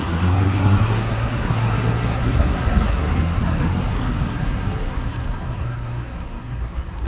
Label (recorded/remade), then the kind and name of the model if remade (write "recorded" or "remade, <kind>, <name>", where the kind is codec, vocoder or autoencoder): remade, codec, SNAC